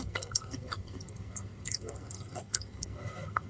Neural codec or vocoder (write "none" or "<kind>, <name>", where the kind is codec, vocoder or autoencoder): codec, SNAC